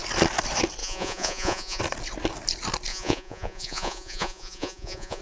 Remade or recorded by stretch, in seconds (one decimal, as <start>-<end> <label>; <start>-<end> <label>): 0.0-0.8 recorded; 0.8-1.8 remade; 1.8-2.9 recorded; 2.9-5.2 remade